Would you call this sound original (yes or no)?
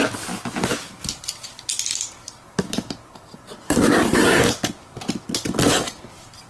yes